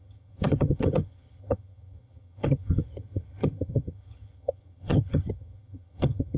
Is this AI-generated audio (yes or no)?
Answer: yes